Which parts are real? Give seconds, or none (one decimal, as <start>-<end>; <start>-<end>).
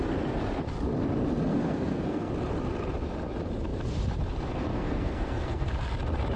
0.0-1.5; 2.3-4.7; 5.7-6.4